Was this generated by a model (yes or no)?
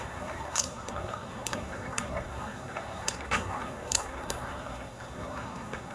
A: yes